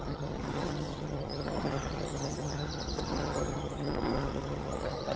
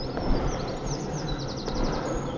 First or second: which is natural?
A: second